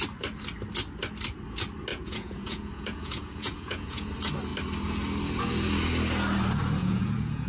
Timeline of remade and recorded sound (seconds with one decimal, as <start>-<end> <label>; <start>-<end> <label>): 0.0-1.9 recorded; 1.9-4.1 remade; 4.1-6.8 recorded; 6.8-7.5 remade